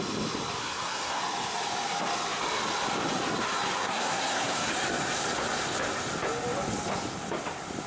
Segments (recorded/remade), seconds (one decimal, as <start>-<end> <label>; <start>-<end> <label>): 0.0-0.6 recorded; 0.6-1.2 remade; 1.2-3.8 recorded; 3.8-4.7 remade; 4.7-7.9 recorded